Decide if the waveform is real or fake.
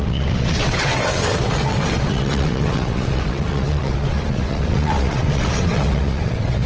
fake